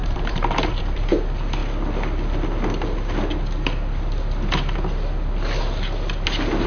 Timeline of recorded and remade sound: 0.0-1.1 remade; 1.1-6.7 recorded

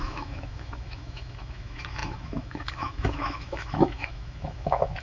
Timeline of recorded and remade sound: 0.0-5.0 remade

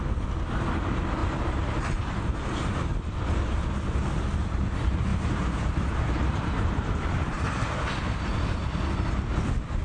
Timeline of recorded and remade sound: 0.0-1.2 recorded; 1.2-3.3 remade; 3.3-5.1 recorded; 5.1-8.3 remade; 8.3-9.8 recorded